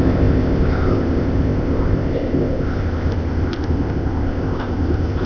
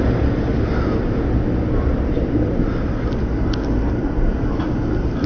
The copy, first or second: first